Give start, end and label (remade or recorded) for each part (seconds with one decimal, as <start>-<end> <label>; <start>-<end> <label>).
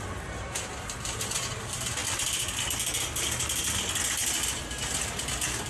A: 0.0-2.0 remade; 2.0-4.4 recorded; 4.4-5.7 remade